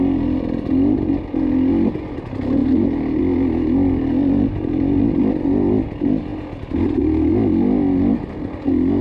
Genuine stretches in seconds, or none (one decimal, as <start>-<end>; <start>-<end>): 0.0-9.0

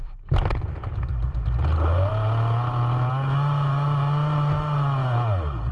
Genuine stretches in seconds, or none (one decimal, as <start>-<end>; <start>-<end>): 2.1-5.7

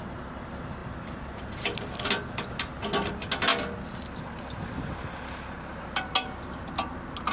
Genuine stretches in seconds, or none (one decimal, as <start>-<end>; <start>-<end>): 0.0-0.8; 1.5-7.3

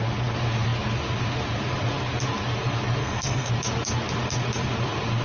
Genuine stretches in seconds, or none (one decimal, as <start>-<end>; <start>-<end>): 0.0-3.0; 3.5-5.2

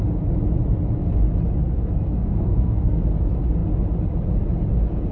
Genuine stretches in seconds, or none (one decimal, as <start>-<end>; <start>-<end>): 0.0-1.6; 3.0-5.1

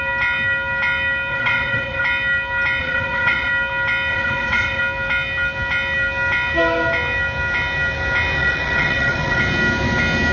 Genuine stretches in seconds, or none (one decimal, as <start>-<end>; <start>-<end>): 0.0-1.3; 2.0-2.8; 3.5-4.1; 4.8-8.4; 9.4-10.3

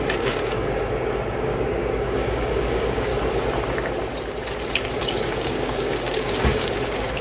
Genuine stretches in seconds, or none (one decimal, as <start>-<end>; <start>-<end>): 3.1-4.9